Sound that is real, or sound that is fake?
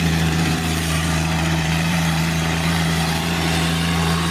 fake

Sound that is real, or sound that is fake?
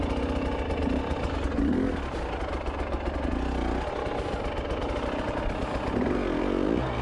real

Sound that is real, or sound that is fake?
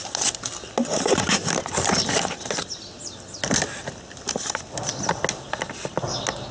real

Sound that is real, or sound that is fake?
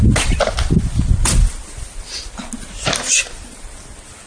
real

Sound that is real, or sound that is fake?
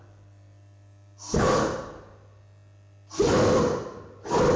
real